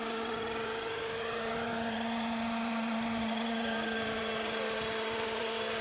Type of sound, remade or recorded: remade